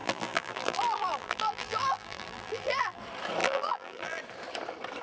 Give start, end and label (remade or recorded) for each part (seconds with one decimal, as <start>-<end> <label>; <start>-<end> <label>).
0.0-3.0 remade; 3.0-3.4 recorded; 3.4-4.2 remade; 4.2-5.0 recorded